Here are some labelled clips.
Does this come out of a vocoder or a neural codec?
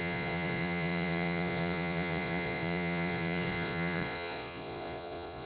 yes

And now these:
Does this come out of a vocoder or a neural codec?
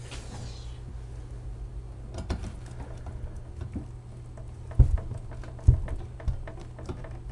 no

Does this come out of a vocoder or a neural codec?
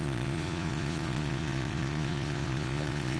yes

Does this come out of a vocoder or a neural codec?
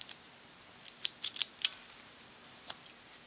yes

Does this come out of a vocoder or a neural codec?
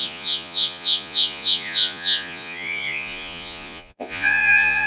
yes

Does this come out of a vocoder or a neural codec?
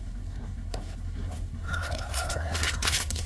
yes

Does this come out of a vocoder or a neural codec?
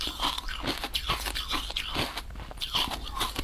no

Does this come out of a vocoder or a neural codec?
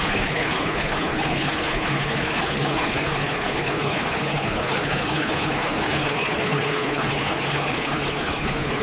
yes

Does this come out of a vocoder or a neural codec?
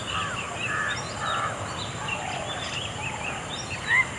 no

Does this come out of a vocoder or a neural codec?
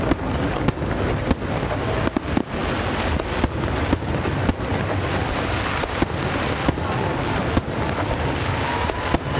no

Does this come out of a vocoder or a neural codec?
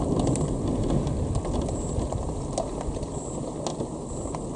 no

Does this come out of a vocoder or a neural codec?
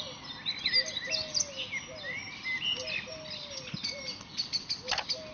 no